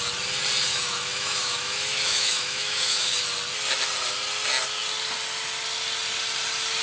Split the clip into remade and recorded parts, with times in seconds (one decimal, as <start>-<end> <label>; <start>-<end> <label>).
0.0-0.7 recorded; 0.7-3.2 remade; 3.2-6.8 recorded